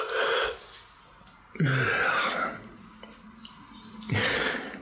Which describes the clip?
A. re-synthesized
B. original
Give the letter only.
B